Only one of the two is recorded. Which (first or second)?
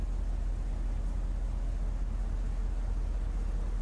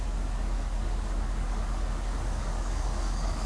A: first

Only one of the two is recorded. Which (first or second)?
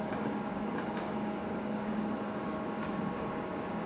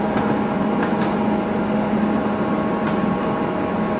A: second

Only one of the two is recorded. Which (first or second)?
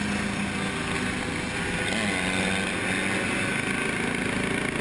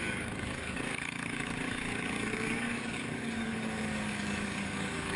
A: first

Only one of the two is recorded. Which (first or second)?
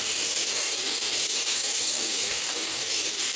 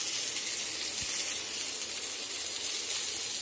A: second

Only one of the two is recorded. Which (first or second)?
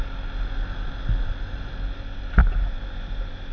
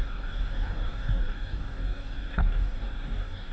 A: first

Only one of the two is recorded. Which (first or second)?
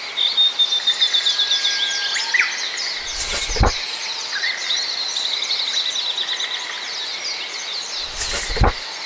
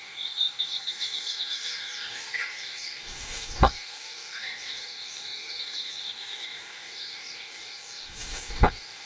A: first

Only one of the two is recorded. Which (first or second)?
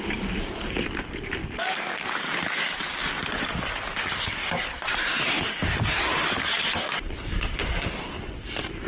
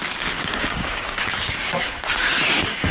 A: first